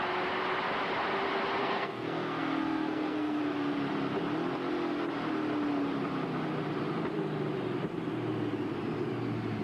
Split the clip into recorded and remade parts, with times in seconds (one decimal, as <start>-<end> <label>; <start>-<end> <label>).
0.0-1.6 recorded; 1.6-3.4 remade; 3.4-9.6 recorded